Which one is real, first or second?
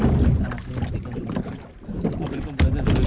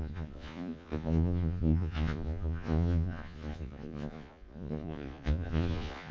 first